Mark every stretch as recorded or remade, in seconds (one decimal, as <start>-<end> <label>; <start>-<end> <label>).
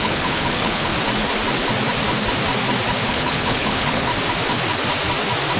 0.0-0.9 remade; 0.9-3.1 recorded; 3.1-4.1 remade; 4.1-5.6 recorded